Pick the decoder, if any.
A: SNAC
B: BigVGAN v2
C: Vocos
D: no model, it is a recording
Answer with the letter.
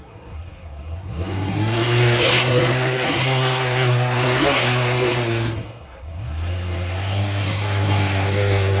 A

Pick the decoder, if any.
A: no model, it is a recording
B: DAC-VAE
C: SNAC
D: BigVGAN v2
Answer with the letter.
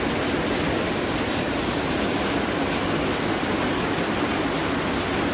A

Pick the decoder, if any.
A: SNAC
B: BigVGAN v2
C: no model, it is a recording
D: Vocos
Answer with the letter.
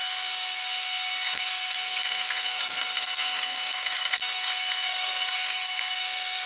A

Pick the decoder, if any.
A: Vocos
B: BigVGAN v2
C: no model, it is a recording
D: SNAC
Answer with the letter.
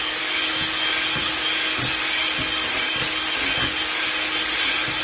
C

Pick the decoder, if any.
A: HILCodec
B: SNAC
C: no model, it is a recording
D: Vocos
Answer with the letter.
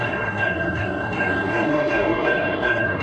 B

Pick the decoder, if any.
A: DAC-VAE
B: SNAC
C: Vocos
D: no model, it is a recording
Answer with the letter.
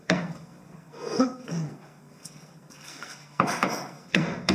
B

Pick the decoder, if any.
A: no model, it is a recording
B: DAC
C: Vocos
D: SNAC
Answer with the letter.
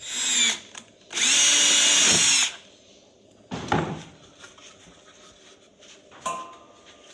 A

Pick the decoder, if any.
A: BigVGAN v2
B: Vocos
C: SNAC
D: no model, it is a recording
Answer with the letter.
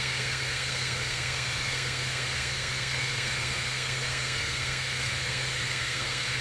C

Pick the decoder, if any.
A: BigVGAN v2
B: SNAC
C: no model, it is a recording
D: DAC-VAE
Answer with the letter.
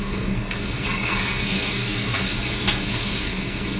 B